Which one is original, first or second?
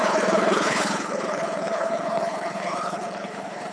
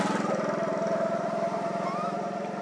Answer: second